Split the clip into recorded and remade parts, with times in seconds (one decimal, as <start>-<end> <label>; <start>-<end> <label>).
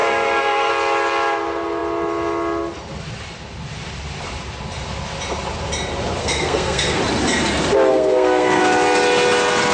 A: 0.0-0.7 remade; 0.7-6.2 recorded; 6.2-7.0 remade; 7.0-7.9 recorded; 7.9-8.6 remade; 8.6-9.7 recorded